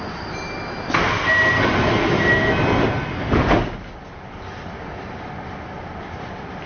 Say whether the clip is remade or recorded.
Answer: recorded